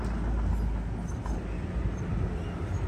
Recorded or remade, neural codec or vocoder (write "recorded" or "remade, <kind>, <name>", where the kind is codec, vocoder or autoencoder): recorded